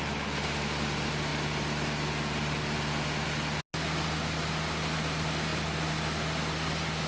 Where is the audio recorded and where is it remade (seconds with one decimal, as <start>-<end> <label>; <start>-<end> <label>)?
0.0-7.1 recorded